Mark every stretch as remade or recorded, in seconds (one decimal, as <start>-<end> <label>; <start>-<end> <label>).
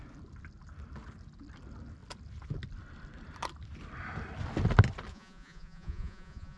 0.0-5.1 recorded; 5.1-6.6 remade